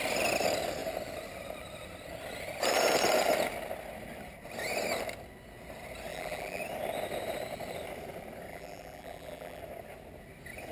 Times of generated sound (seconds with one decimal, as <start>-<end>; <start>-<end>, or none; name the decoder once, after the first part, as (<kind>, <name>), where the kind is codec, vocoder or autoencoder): 6.1-6.6 (vocoder, BigVGAN v2); 8.5-9.6